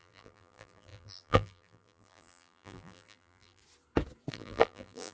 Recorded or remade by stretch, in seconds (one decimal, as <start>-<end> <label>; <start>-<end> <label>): 0.0-3.6 remade; 3.6-4.3 recorded; 4.3-5.1 remade